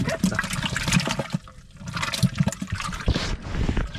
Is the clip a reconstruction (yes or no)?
no